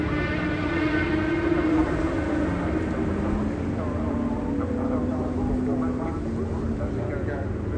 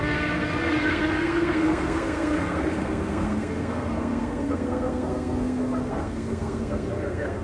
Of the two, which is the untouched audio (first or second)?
first